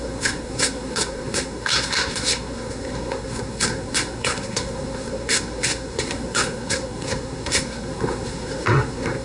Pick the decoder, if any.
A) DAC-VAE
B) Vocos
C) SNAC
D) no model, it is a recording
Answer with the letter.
C